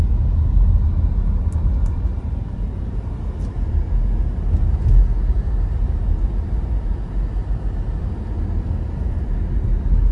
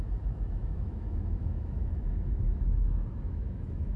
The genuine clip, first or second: first